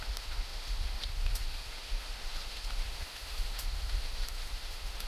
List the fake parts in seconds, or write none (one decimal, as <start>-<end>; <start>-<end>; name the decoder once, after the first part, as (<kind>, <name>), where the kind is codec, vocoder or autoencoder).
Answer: 0.0-5.1 (autoencoder, DAC-VAE)